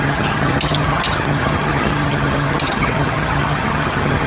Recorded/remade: remade